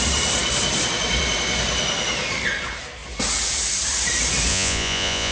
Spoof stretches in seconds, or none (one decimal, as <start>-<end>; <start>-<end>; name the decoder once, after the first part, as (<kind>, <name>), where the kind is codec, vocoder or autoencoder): 4.5-5.3 (vocoder, Vocos)